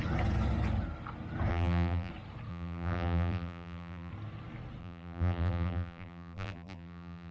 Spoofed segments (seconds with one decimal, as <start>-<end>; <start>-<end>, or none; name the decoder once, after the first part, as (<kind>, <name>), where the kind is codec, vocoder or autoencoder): 1.5-2.1 (vocoder, BigVGAN v2); 2.5-4.1; 4.8-7.3